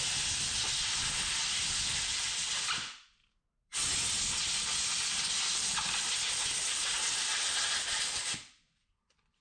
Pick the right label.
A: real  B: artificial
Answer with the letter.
B